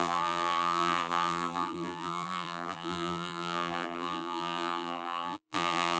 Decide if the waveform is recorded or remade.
remade